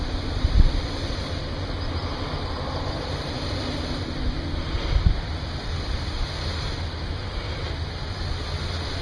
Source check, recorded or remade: recorded